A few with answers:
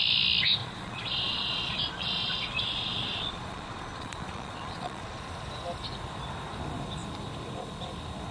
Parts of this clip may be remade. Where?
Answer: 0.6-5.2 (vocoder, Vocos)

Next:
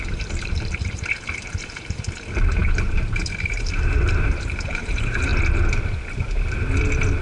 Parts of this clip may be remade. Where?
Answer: 0.0-5.3 (vocoder, BigVGAN v2)

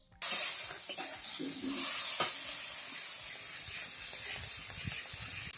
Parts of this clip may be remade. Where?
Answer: none

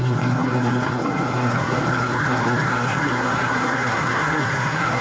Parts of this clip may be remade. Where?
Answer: 0.0-5.0 (codec, SNAC)